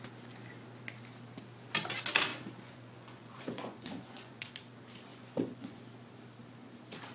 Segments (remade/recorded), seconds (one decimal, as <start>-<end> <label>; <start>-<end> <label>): 0.0-2.3 recorded; 2.3-4.5 remade; 4.5-5.1 recorded; 5.1-5.8 remade; 5.8-7.1 recorded